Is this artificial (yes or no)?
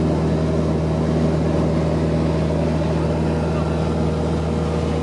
no